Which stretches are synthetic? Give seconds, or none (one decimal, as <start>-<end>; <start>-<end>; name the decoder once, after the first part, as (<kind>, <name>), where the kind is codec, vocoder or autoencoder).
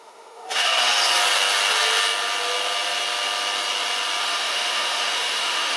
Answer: 0.0-0.7 (autoencoder, DAC-VAE); 4.2-5.8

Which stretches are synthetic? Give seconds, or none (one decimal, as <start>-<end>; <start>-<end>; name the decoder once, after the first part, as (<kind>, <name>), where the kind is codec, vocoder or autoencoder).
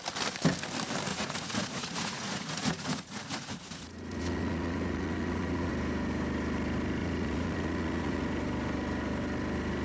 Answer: 1.1-5.7 (vocoder, Vocos); 7.0-8.3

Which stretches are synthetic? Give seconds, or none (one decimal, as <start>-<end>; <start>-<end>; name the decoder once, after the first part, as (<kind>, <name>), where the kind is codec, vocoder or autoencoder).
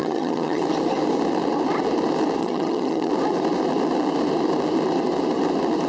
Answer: 0.0-0.6 (vocoder, HiFi-GAN); 2.4-3.1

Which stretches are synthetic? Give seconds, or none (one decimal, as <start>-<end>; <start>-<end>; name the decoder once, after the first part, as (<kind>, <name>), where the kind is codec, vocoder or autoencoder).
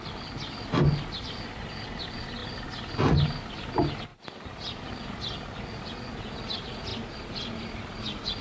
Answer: none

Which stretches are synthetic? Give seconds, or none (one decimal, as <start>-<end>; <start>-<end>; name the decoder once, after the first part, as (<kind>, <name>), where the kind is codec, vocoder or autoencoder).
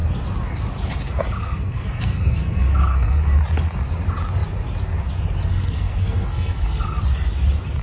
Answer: 1.4-3.2 (codec, SNAC); 5.5-7.0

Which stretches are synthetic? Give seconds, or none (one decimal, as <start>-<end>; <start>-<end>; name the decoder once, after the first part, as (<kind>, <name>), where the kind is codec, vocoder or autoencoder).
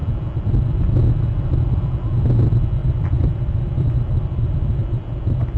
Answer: 2.8-5.6 (vocoder, BigVGAN v2)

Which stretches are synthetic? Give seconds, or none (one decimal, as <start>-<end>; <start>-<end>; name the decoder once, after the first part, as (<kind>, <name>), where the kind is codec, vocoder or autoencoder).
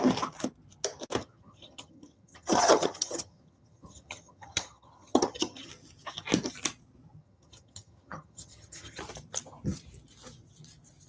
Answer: 1.2-5.7 (vocoder, HiFi-GAN); 7.2-9.0